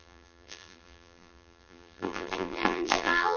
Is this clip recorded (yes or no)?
no